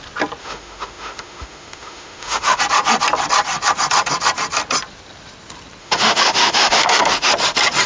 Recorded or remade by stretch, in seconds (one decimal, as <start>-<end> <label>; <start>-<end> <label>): 0.0-0.4 recorded; 0.4-2.6 remade; 2.6-5.8 recorded; 5.8-7.3 remade; 7.3-7.9 recorded